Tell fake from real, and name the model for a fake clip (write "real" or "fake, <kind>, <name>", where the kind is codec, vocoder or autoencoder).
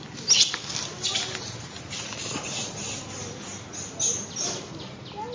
real